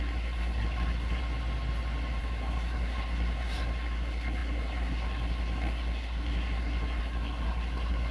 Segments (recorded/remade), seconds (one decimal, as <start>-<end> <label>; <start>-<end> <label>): 0.0-1.2 remade; 1.2-2.2 recorded; 2.2-8.1 remade